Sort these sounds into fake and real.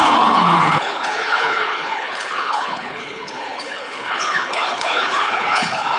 fake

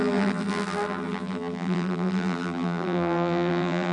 fake